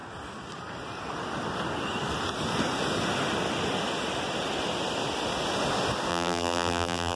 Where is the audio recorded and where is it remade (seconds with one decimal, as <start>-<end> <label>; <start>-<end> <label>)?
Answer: 0.0-6.1 recorded; 6.1-7.2 remade